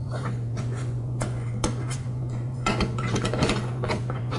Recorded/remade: remade